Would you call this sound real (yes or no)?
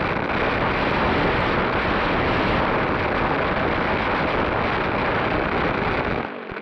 yes